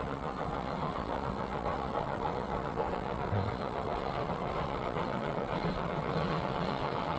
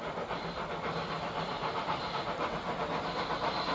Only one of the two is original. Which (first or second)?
second